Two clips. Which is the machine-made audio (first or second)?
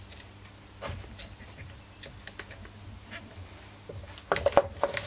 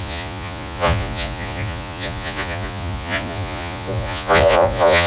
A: second